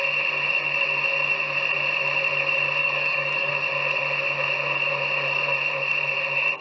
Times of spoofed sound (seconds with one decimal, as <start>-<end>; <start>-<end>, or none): 2.8-3.5

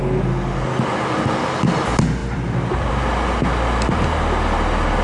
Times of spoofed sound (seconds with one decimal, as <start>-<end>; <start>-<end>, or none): 2.2-2.9

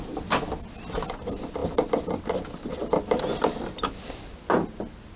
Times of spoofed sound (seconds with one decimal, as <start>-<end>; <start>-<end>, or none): none

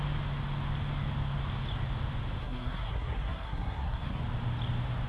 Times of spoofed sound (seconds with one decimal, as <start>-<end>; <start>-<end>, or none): 2.4-4.2

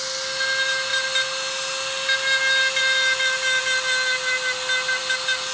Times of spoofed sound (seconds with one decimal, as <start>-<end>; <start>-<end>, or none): none

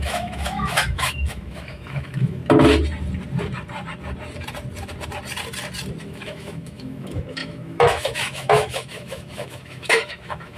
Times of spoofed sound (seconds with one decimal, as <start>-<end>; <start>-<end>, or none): 0.0-2.4; 6.1-10.6

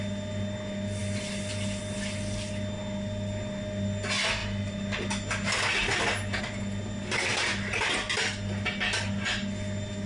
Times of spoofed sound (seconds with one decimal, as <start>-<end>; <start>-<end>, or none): none